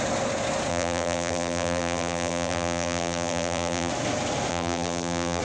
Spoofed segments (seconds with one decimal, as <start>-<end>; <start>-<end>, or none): 0.7-3.9; 4.5-5.4